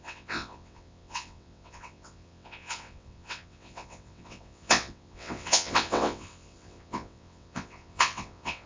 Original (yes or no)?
no